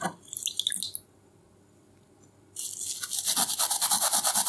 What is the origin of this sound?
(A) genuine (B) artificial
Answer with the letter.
A